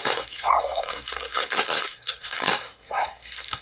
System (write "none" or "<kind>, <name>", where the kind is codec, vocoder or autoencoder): codec, SNAC